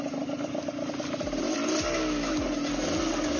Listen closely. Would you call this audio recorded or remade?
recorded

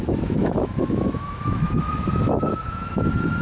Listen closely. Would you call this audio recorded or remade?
remade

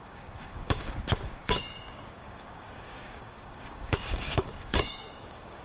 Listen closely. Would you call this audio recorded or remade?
remade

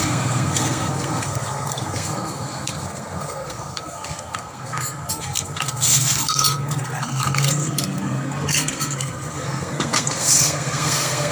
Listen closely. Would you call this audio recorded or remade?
remade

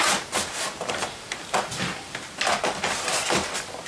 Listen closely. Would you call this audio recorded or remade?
remade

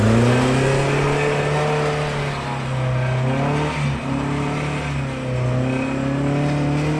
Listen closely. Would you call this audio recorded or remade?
recorded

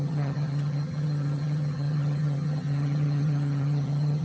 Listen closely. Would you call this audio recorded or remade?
remade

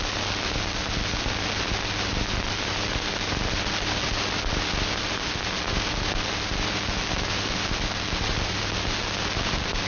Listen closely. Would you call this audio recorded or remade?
recorded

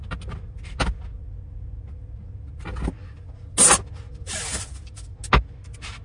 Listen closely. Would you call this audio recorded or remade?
recorded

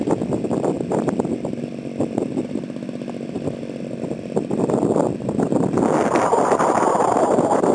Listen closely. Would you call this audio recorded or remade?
recorded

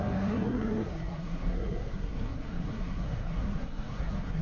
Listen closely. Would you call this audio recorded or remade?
remade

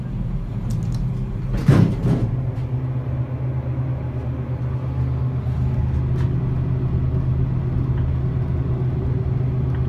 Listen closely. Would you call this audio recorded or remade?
recorded